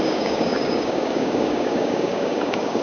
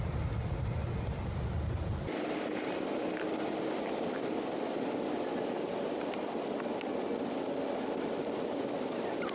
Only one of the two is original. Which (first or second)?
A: second